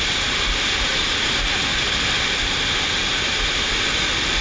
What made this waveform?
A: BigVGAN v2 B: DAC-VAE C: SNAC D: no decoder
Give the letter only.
D